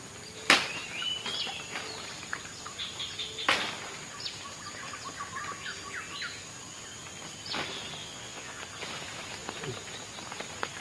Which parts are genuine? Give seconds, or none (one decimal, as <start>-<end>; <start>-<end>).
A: 0.0-8.0; 8.6-10.8